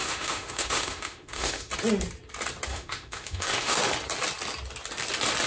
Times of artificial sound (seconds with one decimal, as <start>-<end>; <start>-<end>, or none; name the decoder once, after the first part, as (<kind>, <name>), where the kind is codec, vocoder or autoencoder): 0.0-1.7 (autoencoder, DAC-VAE); 2.7-3.8